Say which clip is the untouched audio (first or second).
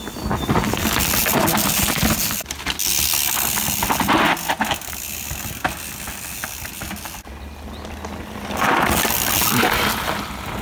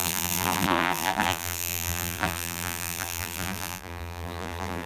first